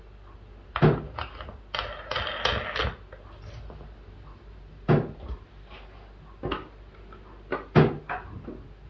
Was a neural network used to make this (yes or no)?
no